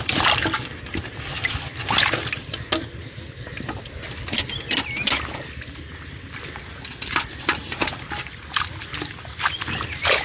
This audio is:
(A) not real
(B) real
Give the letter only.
B